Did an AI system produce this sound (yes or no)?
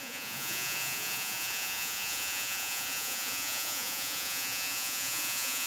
yes